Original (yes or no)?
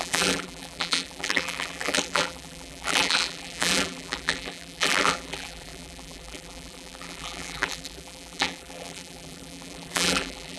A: no